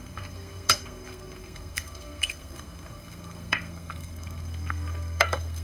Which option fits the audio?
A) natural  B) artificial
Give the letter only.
B